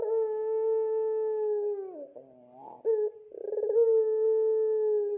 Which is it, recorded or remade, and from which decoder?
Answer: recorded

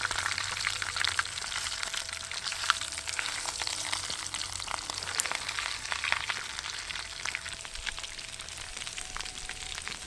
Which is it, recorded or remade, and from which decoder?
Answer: remade, vocoder, BigVGAN v2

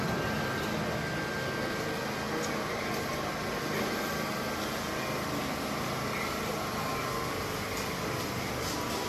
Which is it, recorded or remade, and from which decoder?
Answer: recorded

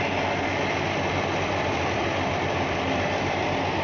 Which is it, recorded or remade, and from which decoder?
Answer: remade, vocoder, BigVGAN v2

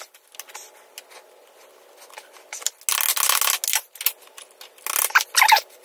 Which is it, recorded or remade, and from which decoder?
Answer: recorded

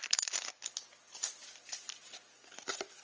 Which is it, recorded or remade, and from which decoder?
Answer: remade, vocoder, BigVGAN v2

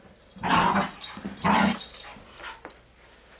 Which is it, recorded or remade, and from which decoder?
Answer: recorded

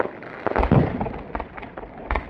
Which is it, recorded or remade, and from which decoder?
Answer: recorded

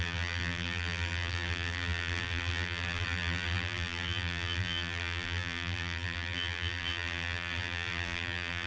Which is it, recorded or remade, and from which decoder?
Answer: remade, vocoder, BigVGAN v2